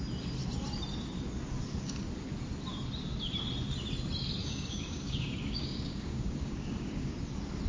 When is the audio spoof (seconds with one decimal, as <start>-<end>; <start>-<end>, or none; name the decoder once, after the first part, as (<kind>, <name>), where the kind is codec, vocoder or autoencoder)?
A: 4.4-7.1 (codec, DAC)